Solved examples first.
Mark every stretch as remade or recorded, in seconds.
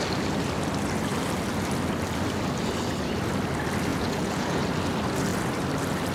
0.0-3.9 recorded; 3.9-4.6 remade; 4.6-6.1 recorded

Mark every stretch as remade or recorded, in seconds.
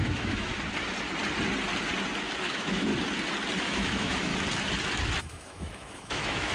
0.0-0.5 remade; 0.5-2.5 recorded; 2.5-2.9 remade; 2.9-3.6 recorded; 3.6-4.3 remade; 4.3-5.2 recorded; 5.2-6.5 remade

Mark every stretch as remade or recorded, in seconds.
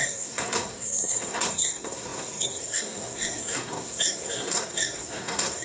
0.0-5.6 remade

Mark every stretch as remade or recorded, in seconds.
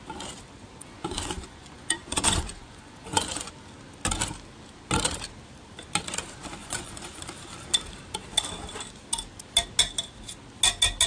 0.0-0.8 recorded; 0.8-3.5 remade; 3.5-6.6 recorded; 6.6-7.2 remade; 7.2-11.1 recorded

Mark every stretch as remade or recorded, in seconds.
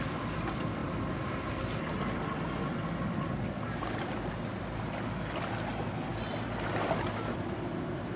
0.0-8.2 recorded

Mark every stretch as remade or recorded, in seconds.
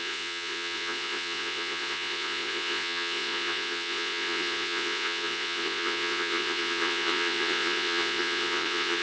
0.0-9.0 remade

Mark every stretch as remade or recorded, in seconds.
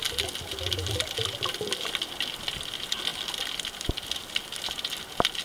0.0-5.4 recorded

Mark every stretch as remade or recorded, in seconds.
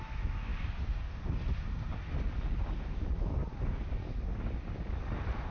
0.0-0.5 remade; 0.5-2.8 recorded; 2.8-3.4 remade; 3.4-5.5 recorded